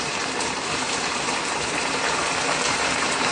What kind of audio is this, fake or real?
fake